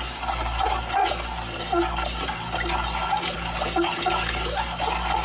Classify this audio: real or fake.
real